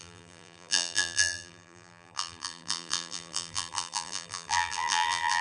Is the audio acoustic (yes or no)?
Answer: no